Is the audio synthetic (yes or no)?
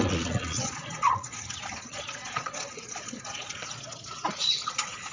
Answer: yes